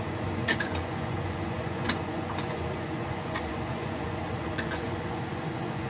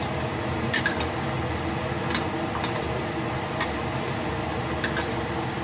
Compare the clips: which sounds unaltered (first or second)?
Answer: second